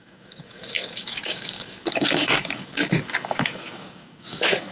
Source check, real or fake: fake